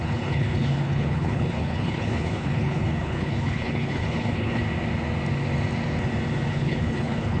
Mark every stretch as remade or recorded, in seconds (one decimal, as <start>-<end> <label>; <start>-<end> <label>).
0.0-4.6 remade; 4.6-6.5 recorded; 6.5-7.4 remade